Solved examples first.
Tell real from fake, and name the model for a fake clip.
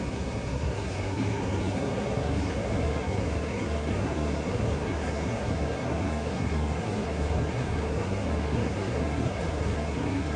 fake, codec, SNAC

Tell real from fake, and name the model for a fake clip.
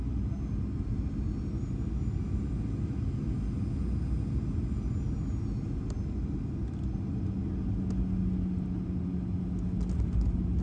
real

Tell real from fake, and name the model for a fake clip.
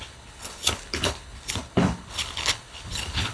fake, codec, HILCodec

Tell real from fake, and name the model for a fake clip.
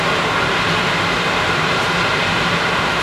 fake, vocoder, BigVGAN v2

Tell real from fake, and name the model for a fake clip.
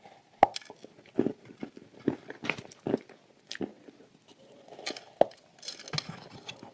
real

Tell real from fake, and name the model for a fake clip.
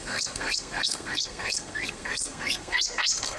fake, codec, SNAC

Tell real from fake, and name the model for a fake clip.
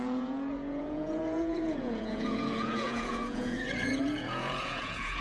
fake, vocoder, Vocos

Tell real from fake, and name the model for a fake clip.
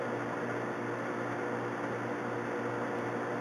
real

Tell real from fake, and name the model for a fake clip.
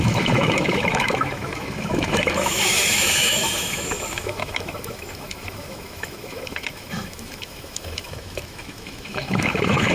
fake, autoencoder, DAC-VAE